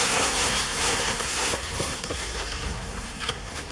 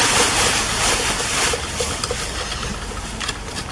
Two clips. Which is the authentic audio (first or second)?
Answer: second